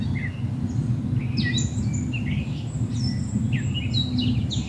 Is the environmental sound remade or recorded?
recorded